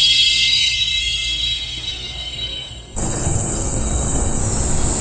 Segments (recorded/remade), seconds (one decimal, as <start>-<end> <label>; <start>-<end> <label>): 0.0-4.4 remade; 4.4-5.0 recorded